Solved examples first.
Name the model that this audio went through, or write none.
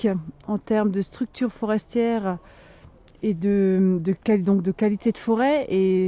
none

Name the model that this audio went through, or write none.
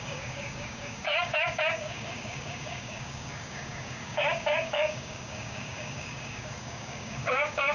codec, DAC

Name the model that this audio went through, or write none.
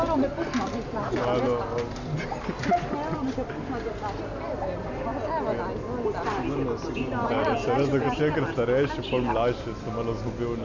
none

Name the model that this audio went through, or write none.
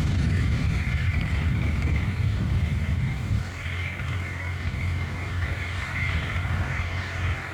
codec, DAC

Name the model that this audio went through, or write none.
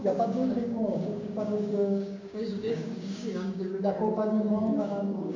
codec, DAC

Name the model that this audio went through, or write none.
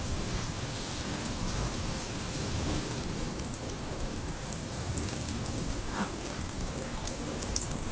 codec, DAC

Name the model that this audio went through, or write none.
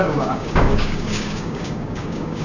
codec, DAC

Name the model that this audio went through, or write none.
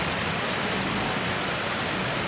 none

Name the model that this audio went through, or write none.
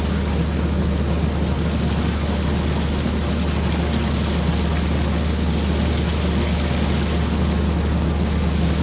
none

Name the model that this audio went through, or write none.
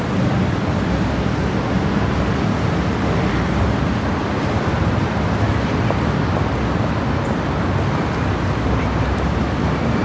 none